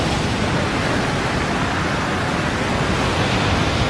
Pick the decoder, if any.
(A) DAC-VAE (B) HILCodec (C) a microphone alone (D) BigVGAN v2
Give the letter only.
C